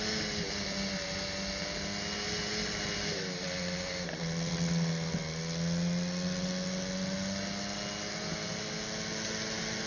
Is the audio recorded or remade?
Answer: recorded